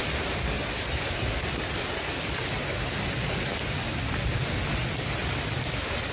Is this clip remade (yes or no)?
no